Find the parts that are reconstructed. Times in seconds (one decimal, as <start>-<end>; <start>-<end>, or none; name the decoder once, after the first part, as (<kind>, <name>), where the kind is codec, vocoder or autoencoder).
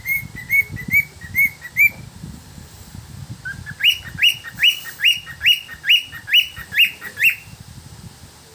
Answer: none